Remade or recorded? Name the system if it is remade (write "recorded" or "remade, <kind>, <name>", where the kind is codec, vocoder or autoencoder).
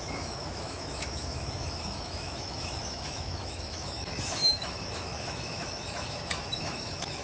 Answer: remade, autoencoder, DAC-VAE